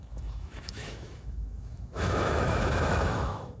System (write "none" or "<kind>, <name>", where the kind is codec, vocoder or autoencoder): autoencoder, DAC-VAE